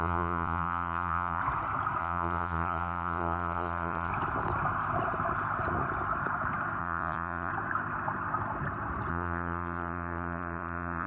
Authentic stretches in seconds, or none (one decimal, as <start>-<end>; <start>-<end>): 1.4-2.0; 4.1-6.8; 7.5-9.1